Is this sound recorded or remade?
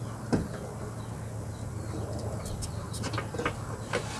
recorded